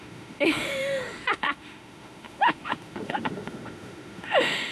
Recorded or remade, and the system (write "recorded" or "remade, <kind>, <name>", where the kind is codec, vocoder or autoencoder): remade, autoencoder, DAC-VAE